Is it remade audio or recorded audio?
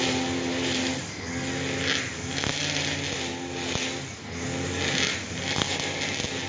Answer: recorded